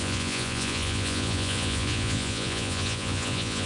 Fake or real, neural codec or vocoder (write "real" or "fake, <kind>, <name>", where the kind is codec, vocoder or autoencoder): fake, vocoder, Vocos